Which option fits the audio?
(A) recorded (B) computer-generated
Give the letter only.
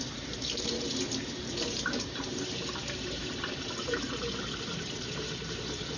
B